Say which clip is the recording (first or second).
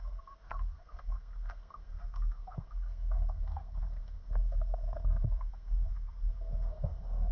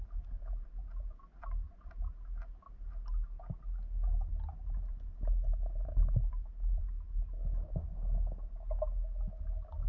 second